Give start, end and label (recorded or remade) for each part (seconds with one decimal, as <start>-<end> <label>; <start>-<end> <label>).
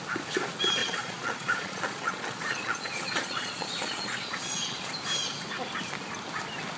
0.0-0.8 recorded; 0.8-4.9 remade; 4.9-6.8 recorded